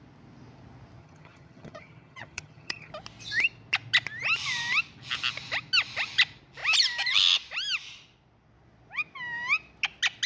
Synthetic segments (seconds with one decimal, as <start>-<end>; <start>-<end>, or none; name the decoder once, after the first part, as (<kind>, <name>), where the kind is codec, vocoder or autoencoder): 1.0-2.9 (vocoder, HiFi-GAN)